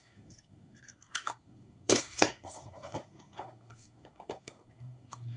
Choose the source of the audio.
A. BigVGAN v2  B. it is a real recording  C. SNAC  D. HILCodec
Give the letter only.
C